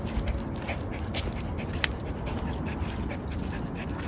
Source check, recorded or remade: recorded